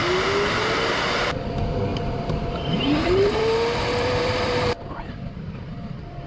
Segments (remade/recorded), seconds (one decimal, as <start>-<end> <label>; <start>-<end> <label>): 0.0-1.9 recorded; 1.9-5.7 remade; 5.7-6.3 recorded